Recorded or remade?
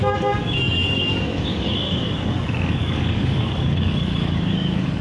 remade